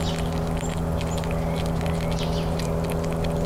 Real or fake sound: real